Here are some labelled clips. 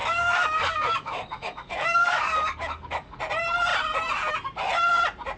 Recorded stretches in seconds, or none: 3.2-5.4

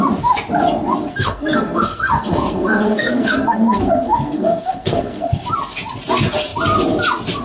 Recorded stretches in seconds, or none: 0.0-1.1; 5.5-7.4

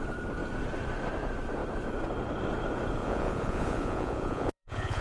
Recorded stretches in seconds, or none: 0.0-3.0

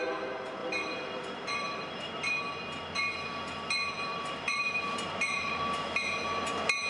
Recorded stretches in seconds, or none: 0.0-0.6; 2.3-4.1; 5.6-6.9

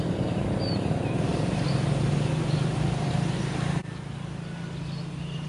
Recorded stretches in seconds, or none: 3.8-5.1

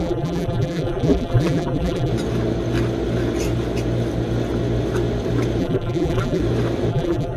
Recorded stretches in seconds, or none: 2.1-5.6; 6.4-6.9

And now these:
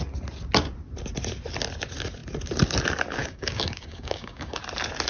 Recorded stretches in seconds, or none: 0.0-3.2; 4.6-5.1